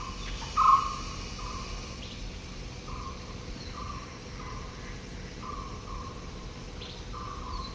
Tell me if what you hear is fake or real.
real